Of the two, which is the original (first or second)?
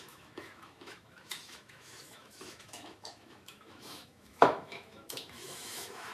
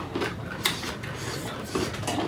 second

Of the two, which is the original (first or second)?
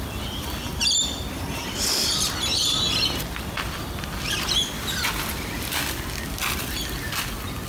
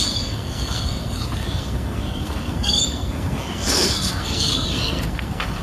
first